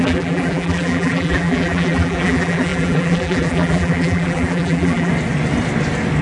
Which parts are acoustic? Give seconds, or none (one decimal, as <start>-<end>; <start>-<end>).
5.1-6.2